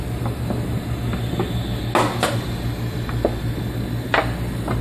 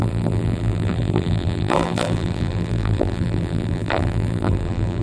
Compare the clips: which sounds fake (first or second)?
second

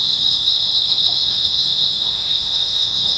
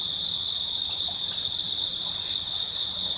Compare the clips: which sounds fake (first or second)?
first